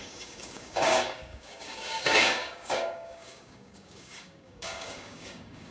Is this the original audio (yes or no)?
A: no